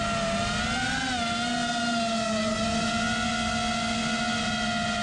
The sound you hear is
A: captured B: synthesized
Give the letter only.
A